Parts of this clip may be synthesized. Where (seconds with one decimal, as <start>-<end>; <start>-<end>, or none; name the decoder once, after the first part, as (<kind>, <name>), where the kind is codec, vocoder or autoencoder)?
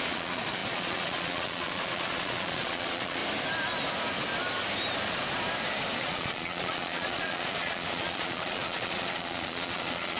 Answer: 0.0-3.2 (vocoder, Vocos); 6.0-10.2